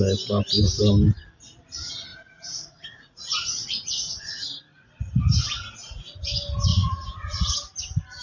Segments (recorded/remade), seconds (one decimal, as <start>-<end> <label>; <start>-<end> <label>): 0.0-2.1 recorded; 2.1-4.4 remade; 4.4-5.8 recorded; 5.8-6.3 remade; 6.3-6.7 recorded; 6.7-7.5 remade; 7.5-8.2 recorded